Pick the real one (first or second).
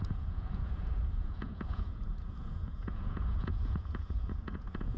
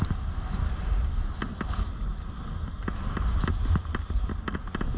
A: second